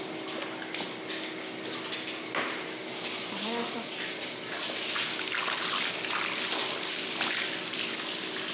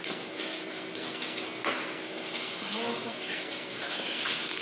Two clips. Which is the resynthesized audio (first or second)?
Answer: second